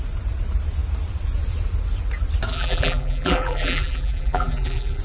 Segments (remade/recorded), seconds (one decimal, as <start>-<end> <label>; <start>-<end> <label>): 0.0-2.5 recorded; 2.5-5.0 remade